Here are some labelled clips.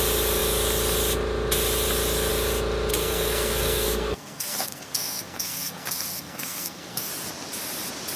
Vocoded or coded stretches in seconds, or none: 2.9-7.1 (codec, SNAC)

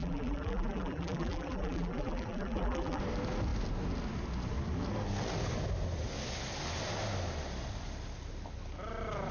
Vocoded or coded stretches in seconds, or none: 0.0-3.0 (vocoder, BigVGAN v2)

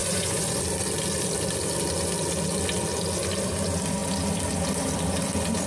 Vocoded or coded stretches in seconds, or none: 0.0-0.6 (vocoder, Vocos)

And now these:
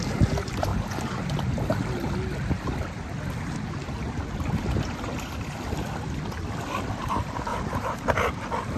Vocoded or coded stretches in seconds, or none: 0.7-1.3 (vocoder, BigVGAN v2); 7.5-8.1

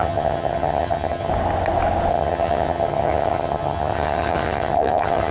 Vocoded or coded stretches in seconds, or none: 0.0-1.3 (vocoder, HiFi-GAN); 2.1-5.3

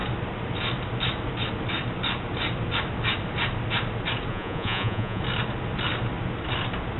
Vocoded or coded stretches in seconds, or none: 4.3-5.2 (vocoder, Vocos)